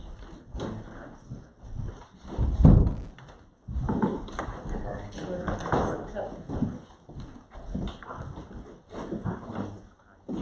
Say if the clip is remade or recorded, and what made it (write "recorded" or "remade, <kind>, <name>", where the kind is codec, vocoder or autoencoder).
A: recorded